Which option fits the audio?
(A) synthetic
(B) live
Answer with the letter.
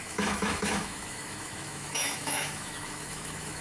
A